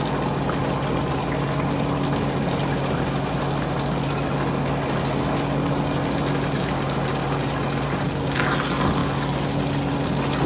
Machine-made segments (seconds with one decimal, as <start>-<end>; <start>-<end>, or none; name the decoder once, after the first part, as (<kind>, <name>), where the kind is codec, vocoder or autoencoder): none